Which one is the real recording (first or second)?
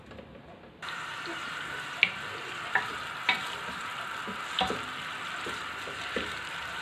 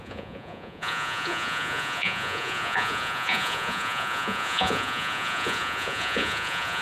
first